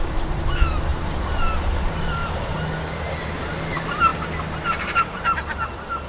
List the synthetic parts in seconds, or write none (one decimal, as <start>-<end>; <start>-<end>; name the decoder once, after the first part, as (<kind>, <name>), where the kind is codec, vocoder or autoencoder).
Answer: 0.0-2.2 (vocoder, BigVGAN v2); 3.5-4.1